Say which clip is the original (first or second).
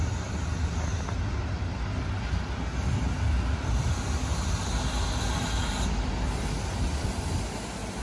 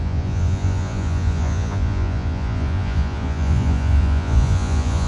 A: first